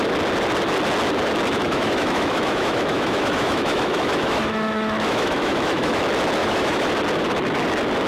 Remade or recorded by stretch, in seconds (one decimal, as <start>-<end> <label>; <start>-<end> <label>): 0.0-1.6 recorded; 1.6-6.0 remade; 6.0-6.4 recorded; 6.4-6.9 remade; 6.9-8.1 recorded